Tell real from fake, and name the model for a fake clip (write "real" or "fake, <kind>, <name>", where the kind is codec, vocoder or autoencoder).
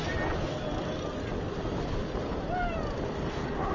real